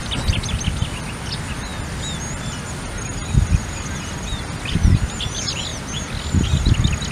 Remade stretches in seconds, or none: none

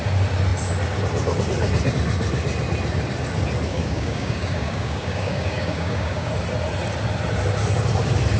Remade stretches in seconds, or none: 3.7-6.3 (codec, DAC)

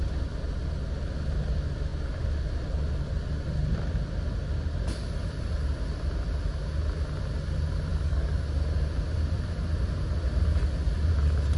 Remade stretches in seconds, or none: 7.9-8.4 (codec, DAC)

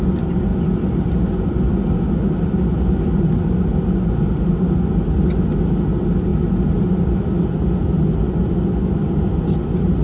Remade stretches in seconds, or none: 0.5-2.1 (vocoder, BigVGAN v2)